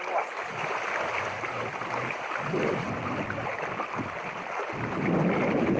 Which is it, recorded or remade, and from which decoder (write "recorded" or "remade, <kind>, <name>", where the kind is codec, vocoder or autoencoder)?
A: recorded